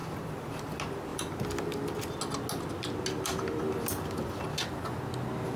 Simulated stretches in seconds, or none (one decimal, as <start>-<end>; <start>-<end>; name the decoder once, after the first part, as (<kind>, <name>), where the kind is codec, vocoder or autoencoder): none